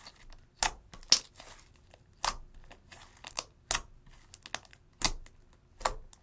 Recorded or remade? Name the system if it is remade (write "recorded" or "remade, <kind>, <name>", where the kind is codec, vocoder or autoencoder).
recorded